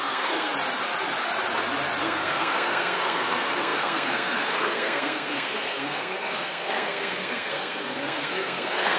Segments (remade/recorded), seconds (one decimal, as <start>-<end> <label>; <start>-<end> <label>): 0.0-0.5 remade; 0.5-2.0 recorded; 2.0-9.0 remade